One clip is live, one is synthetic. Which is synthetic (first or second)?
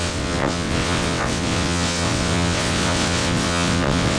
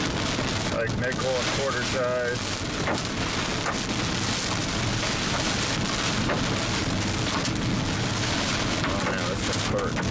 first